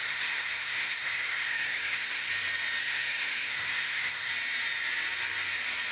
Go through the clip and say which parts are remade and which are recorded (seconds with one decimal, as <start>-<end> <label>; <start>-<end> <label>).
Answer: 0.0-2.3 remade; 2.3-2.8 recorded; 2.8-4.3 remade; 4.3-5.9 recorded